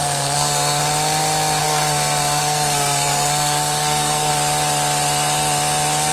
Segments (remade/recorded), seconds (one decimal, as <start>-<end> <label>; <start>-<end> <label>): 0.0-0.8 remade; 0.8-1.6 recorded; 1.6-4.3 remade; 4.3-6.1 recorded